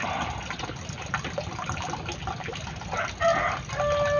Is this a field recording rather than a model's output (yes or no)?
yes